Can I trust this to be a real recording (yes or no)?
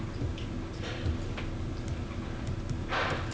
yes